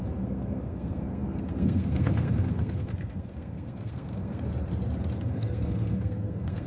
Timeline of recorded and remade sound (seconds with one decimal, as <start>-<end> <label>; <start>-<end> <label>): 0.0-4.5 remade; 4.5-5.2 recorded; 5.2-6.7 remade